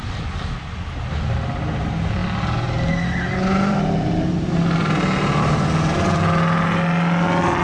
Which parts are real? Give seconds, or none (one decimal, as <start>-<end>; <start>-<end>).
0.0-7.6